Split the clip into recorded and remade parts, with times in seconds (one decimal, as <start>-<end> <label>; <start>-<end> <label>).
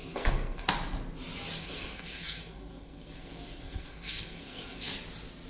0.0-0.7 remade; 0.7-1.6 recorded; 1.6-4.9 remade; 4.9-5.5 recorded